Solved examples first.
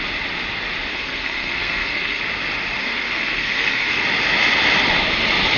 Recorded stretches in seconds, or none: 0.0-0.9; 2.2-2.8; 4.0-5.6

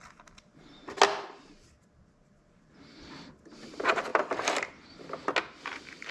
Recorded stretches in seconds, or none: 0.0-6.1

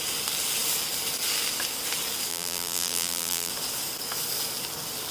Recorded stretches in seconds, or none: 0.0-2.3; 3.5-5.1

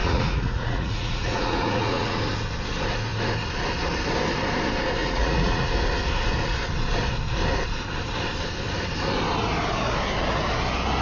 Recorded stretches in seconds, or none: 2.2-5.0; 5.7-11.0